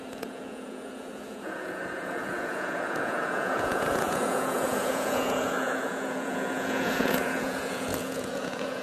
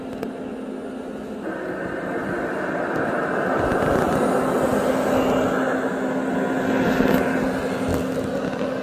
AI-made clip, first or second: first